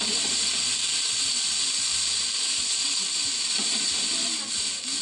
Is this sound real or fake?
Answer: real